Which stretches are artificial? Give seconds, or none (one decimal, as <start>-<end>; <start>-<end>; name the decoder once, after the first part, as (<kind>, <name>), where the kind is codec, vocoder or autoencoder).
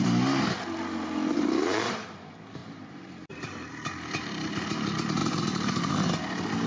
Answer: 2.6-3.7 (vocoder, BigVGAN v2); 5.2-5.9